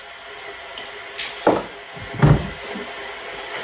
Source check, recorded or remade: recorded